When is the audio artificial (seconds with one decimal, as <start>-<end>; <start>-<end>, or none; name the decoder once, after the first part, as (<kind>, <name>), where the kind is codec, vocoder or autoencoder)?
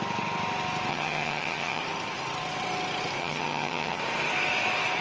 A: 0.9-1.8 (vocoder, HiFi-GAN); 3.2-4.0